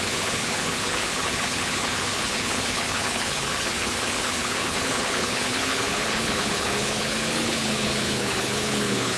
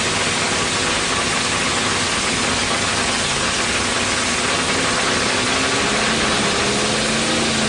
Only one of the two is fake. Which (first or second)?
first